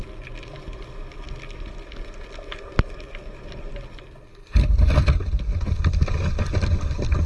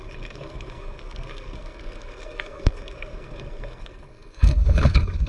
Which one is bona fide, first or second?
first